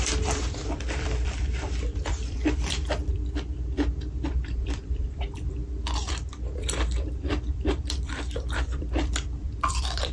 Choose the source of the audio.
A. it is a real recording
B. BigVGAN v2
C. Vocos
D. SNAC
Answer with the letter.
B